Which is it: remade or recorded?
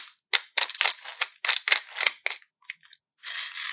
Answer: recorded